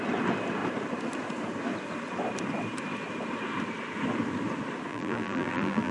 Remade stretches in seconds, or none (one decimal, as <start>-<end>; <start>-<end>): 4.9-5.9